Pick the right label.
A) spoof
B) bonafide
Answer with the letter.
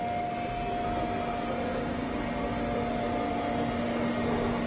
B